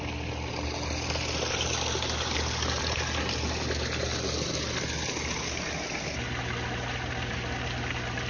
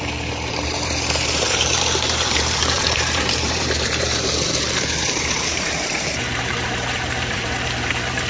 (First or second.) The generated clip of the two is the second